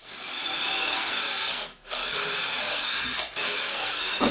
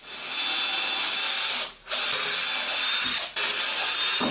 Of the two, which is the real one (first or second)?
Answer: second